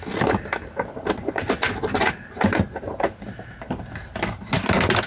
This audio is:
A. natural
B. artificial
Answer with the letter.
A